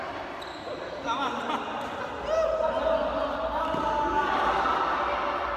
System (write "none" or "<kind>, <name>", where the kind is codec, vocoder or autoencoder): none